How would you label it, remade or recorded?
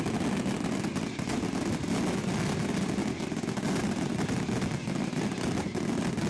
recorded